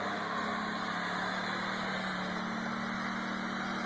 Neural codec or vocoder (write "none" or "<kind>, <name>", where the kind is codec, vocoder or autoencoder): none